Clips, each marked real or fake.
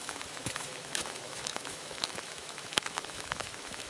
fake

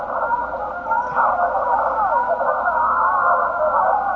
real